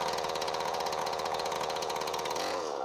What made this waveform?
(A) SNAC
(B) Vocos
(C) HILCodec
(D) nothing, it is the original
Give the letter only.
B